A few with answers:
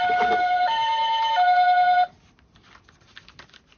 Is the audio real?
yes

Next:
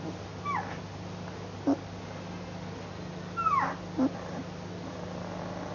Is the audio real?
yes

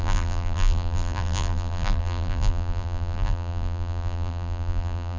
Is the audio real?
no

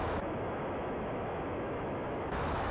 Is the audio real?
no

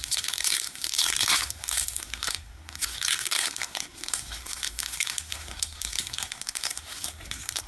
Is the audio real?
no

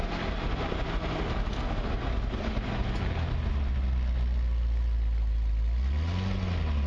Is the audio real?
yes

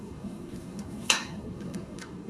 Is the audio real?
no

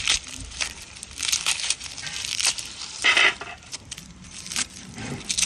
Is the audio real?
no